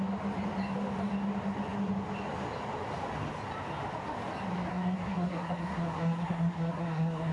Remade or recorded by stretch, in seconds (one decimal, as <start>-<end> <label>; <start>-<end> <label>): 0.0-4.7 recorded; 4.7-7.3 remade